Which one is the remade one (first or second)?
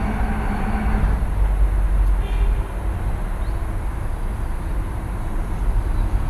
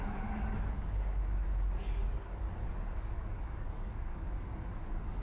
second